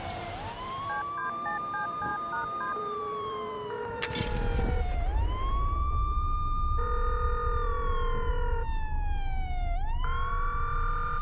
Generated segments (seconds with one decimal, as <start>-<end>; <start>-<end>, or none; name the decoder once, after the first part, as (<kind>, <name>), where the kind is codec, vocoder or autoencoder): 0.0-11.2 (vocoder, BigVGAN v2)